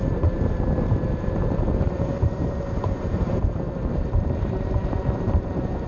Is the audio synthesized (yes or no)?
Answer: yes